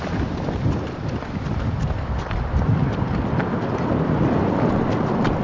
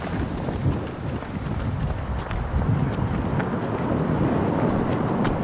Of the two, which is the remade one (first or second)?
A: first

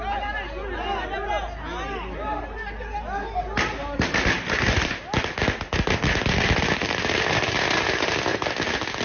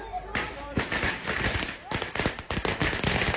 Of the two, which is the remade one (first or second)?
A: second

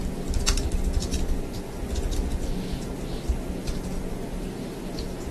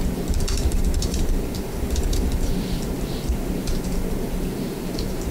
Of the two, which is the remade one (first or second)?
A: second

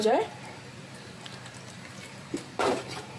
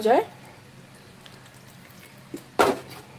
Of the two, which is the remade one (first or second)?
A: first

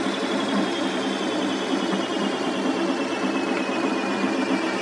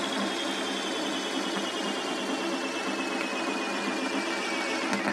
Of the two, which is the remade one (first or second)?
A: first